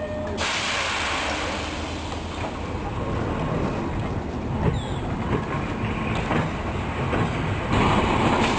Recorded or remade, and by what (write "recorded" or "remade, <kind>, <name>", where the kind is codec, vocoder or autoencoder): recorded